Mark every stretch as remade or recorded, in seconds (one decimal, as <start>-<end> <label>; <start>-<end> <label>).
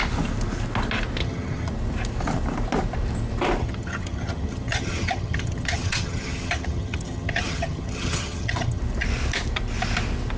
0.0-1.2 recorded; 1.2-1.7 remade; 1.7-3.6 recorded; 3.6-8.8 remade; 8.8-10.4 recorded